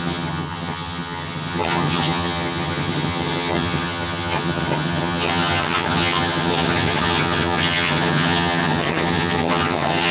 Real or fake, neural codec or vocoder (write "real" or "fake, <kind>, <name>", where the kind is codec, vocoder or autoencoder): fake, vocoder, HiFi-GAN